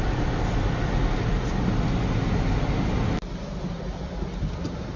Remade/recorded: recorded